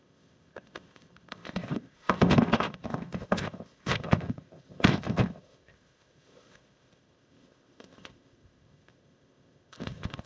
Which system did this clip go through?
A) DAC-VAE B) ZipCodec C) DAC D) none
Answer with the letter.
B